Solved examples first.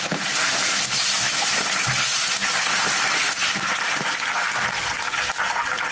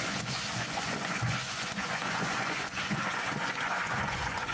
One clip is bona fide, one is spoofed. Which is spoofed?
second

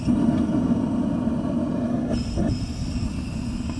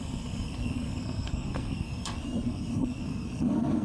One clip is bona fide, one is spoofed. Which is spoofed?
second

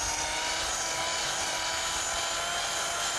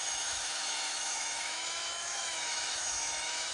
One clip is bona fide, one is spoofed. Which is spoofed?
second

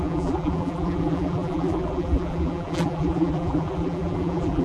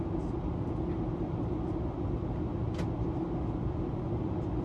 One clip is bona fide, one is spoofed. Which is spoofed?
first